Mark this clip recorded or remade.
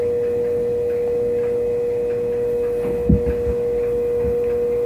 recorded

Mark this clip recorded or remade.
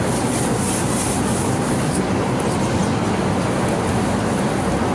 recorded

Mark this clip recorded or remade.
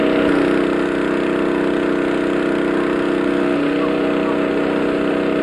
recorded